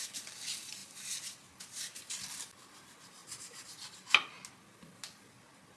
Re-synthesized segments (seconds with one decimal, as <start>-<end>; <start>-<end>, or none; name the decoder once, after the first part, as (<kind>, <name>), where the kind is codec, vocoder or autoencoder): none